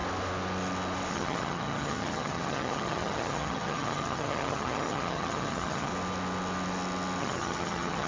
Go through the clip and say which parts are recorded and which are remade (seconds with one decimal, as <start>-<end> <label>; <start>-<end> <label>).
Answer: 0.0-1.1 recorded; 1.1-5.9 remade; 5.9-7.2 recorded; 7.2-8.1 remade